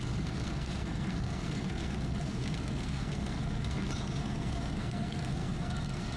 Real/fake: fake